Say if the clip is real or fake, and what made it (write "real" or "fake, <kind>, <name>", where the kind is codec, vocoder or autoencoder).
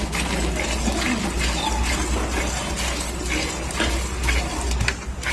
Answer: real